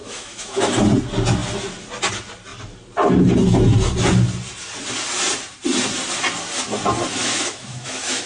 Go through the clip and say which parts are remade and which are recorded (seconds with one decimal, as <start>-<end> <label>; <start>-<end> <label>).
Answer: 0.0-0.7 remade; 0.7-7.2 recorded; 7.2-8.3 remade